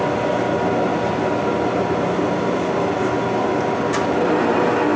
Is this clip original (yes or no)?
yes